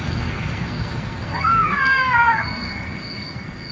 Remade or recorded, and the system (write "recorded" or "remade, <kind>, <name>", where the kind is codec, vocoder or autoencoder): remade, codec, SNAC